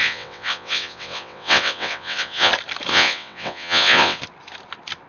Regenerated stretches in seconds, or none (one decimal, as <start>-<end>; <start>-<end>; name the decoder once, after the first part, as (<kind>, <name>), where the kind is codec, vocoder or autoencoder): 0.0-2.5 (vocoder, WaveNeXt); 2.9-4.2